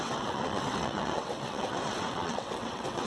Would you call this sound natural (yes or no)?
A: no